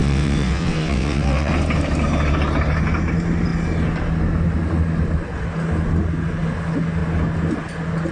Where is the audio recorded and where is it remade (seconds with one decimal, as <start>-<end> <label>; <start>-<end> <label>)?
0.0-1.5 remade; 1.5-8.1 recorded